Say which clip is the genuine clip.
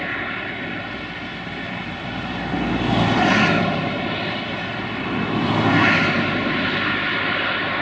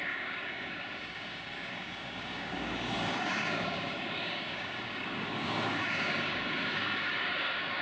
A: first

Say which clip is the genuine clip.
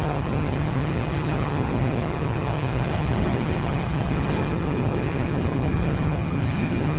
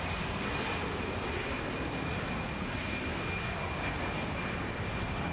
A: second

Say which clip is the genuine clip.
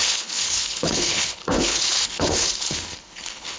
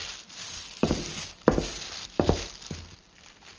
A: second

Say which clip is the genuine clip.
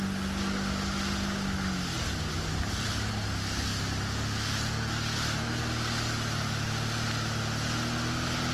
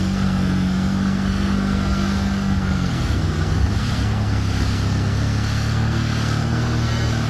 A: first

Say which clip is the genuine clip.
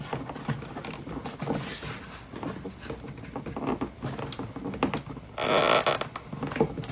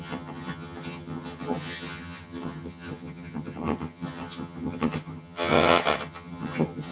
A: first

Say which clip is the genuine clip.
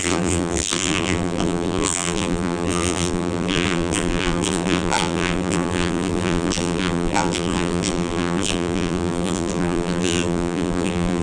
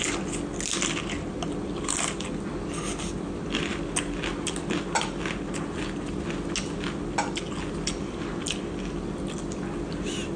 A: second